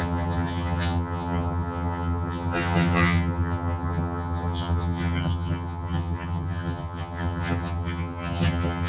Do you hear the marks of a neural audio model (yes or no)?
yes